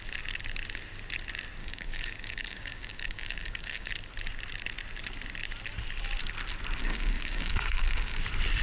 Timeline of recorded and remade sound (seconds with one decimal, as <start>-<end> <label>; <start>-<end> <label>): 0.0-1.6 recorded; 1.6-3.9 remade; 3.9-6.8 recorded; 6.8-8.2 remade; 8.2-8.6 recorded